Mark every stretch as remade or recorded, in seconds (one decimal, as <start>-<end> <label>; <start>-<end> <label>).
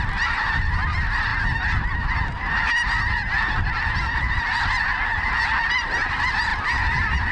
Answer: 0.0-1.3 remade; 1.3-5.7 recorded; 5.7-6.5 remade; 6.5-7.3 recorded